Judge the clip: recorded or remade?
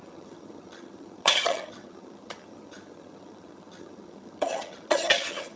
remade